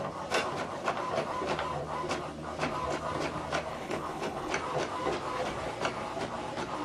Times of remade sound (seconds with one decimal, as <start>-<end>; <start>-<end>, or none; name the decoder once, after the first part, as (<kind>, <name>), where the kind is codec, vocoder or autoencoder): 3.7-4.5 (codec, HILCodec)